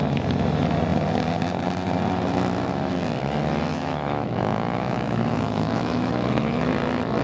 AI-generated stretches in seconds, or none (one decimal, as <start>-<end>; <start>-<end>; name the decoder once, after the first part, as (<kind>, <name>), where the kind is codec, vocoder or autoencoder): 3.7-6.7 (autoencoder, DAC-VAE)